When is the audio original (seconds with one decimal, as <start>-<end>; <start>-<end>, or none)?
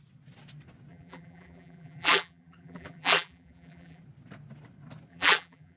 0.0-0.9; 4.0-5.1